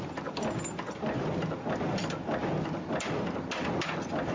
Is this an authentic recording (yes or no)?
yes